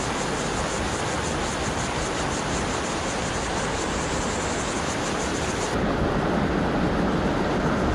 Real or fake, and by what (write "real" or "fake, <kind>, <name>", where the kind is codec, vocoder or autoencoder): real